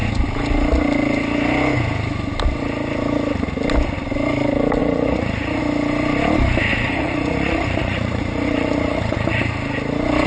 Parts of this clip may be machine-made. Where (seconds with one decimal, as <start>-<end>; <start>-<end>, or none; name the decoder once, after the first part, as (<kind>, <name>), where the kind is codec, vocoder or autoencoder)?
4.8-5.6 (vocoder, Vocos); 6.7-9.5